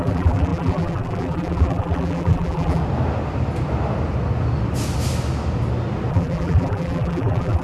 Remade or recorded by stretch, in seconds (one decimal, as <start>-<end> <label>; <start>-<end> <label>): 0.0-2.8 remade; 2.8-6.1 recorded; 6.1-7.6 remade